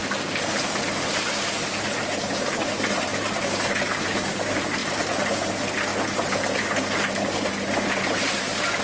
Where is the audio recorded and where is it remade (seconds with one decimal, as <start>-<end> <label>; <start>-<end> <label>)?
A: 0.0-8.8 remade